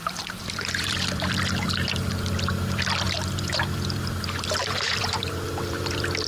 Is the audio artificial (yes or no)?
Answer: yes